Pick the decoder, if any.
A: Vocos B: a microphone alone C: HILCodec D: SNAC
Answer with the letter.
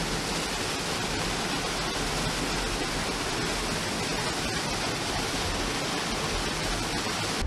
B